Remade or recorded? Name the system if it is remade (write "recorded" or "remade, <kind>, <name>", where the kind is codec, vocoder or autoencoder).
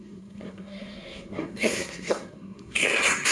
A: remade, codec, SNAC